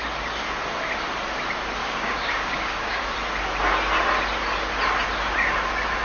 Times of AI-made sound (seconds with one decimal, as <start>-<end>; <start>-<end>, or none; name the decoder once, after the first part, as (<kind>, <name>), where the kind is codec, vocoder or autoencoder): 1.8-3.0 (codec, DAC)